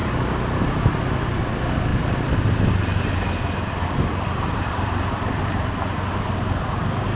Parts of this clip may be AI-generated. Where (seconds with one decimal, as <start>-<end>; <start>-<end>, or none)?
none